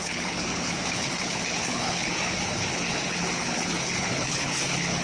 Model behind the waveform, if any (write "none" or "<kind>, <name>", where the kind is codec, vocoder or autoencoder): codec, HILCodec